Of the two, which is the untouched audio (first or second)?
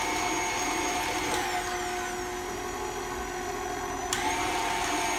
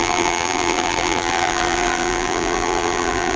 first